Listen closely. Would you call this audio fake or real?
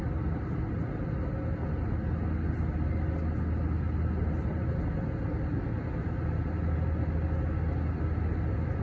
real